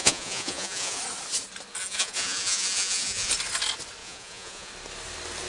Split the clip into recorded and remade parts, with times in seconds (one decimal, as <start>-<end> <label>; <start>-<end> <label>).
0.0-1.0 remade; 1.0-1.8 recorded; 1.8-3.3 remade; 3.3-4.0 recorded; 4.0-4.7 remade; 4.7-5.5 recorded